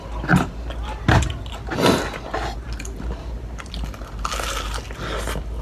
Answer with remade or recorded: recorded